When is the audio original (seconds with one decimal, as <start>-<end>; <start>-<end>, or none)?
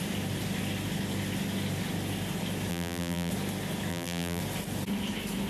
0.0-2.7; 3.3-3.9; 4.4-5.5